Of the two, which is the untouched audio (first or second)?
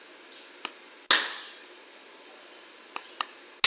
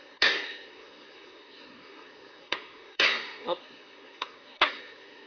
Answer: first